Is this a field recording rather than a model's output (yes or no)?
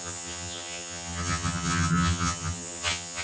no